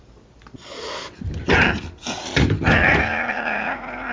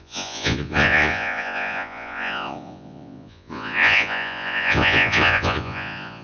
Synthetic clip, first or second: second